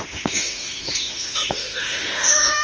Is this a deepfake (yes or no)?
yes